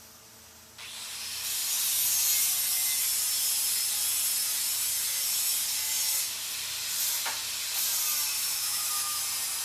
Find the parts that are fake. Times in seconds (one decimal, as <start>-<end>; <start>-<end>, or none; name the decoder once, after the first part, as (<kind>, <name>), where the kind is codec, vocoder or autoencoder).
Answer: 8.4-9.2 (autoencoder, DAC-VAE)

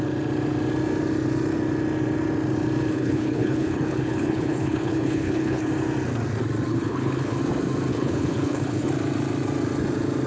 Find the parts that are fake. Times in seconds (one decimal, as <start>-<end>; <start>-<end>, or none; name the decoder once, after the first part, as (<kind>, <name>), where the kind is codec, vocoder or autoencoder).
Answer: 2.9-5.7 (codec, HILCodec); 6.7-7.4; 7.9-8.9

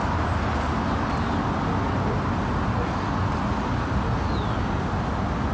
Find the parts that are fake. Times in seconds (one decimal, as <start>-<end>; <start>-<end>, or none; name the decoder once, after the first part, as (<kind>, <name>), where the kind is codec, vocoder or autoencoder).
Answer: none

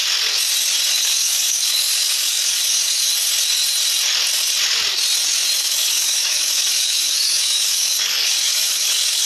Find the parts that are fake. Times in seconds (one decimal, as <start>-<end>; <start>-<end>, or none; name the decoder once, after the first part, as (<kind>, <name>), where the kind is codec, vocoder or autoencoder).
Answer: 0.9-3.1 (codec, DAC); 5.6-9.3

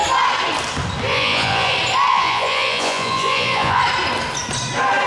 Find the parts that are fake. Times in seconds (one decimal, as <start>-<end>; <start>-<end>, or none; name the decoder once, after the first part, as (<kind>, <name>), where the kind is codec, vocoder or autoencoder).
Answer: 1.1-1.7 (vocoder, Vocos); 2.1-3.8

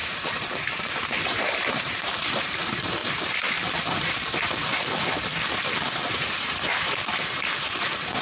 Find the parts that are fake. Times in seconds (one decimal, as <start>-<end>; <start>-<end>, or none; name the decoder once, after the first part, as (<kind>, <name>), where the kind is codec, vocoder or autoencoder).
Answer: 0.0-3.0 (vocoder, BigVGAN v2); 6.1-8.2

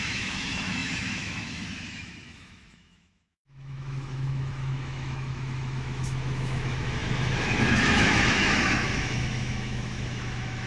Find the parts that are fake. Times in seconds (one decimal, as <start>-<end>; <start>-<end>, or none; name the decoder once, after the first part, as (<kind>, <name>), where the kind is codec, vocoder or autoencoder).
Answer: 0.0-10.7 (autoencoder, DAC-VAE)

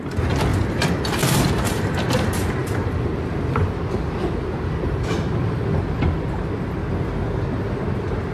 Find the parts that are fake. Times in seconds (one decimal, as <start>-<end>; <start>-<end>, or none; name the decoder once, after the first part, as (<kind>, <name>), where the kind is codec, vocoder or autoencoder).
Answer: 0.5-1.5 (vocoder, BigVGAN v2); 2.6-5.8